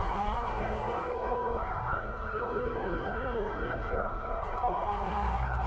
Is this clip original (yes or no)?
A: no